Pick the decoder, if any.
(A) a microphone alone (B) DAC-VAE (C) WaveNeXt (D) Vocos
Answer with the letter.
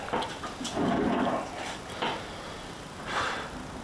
A